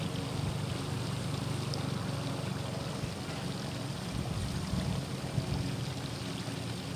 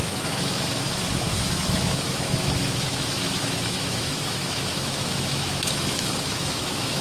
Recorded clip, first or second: first